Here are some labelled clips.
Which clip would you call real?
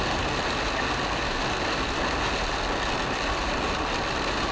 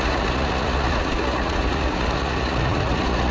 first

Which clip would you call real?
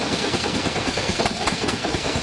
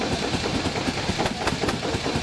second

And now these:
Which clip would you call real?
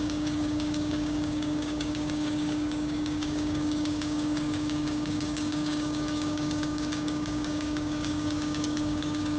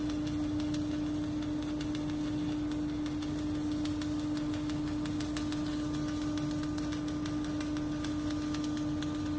second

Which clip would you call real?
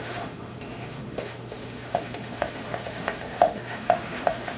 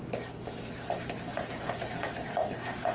second